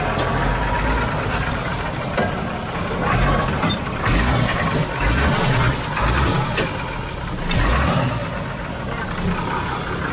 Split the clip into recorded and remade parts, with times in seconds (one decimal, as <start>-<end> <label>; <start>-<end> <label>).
0.0-10.1 recorded